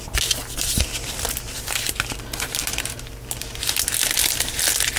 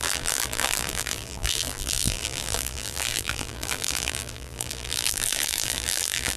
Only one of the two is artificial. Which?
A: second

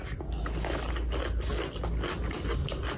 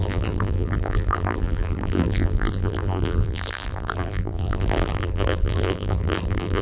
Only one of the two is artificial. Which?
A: second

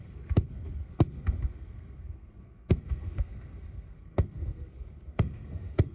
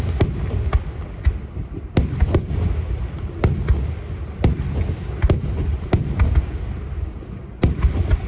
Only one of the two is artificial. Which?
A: first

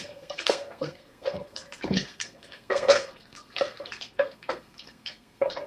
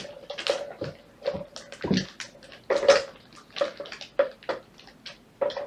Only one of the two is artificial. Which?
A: first